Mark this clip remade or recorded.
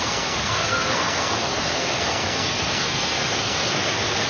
remade